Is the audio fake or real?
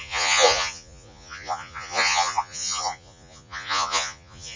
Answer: fake